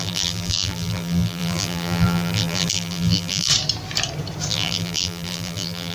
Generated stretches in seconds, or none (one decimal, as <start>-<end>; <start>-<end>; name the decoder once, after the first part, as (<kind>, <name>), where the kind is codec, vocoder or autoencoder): 0.0-3.5 (vocoder, BigVGAN v2); 4.5-5.9